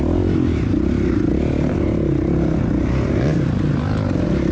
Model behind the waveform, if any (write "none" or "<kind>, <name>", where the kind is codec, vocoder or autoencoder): none